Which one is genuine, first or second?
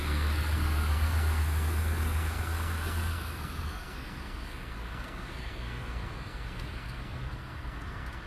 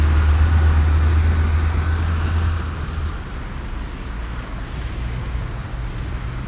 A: second